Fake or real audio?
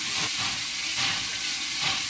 real